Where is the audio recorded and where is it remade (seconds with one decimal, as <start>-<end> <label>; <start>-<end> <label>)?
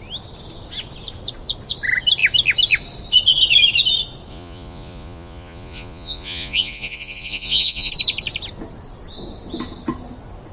0.0-4.3 recorded; 4.3-7.9 remade; 7.9-10.5 recorded